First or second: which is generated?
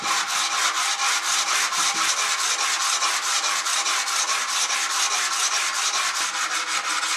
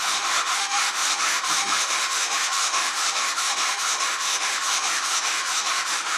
second